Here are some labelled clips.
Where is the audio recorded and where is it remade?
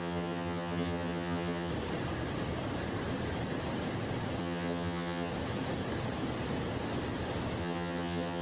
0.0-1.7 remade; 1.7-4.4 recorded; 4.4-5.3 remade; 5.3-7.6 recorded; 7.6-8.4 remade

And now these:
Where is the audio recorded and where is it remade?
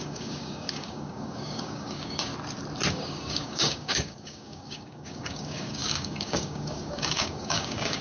0.0-2.3 remade; 2.3-2.9 recorded; 2.9-8.0 remade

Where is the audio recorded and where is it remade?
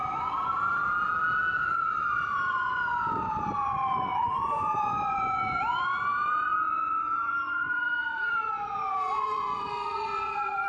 0.0-0.8 remade; 0.8-1.6 recorded; 1.6-10.7 remade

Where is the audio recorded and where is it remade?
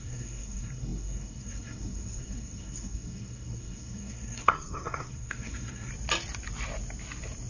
0.0-5.9 remade; 5.9-7.5 recorded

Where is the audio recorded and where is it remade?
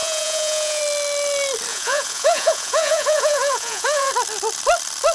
0.0-0.8 remade; 0.8-1.7 recorded; 1.7-4.1 remade; 4.1-5.1 recorded